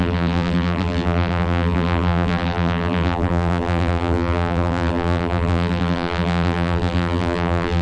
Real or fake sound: fake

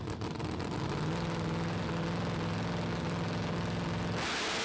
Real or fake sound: real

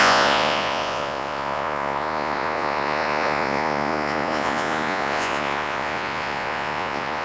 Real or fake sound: fake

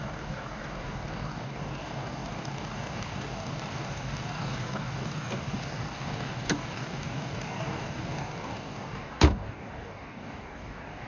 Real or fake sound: fake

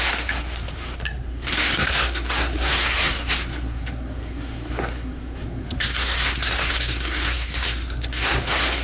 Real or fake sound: fake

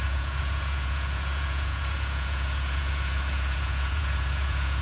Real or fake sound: fake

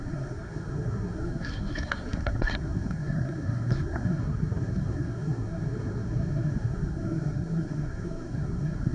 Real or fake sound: fake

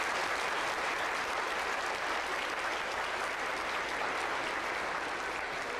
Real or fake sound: real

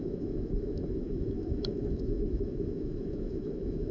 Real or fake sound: fake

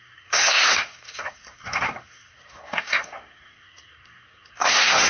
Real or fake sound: fake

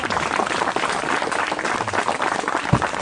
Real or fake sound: real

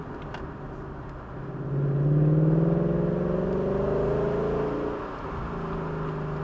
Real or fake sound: real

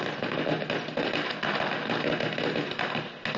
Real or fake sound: real